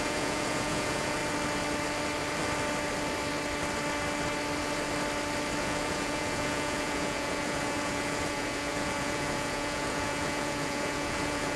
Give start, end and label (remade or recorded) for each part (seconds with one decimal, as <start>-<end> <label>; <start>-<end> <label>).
0.0-1.2 remade; 1.2-5.6 recorded; 5.6-11.6 remade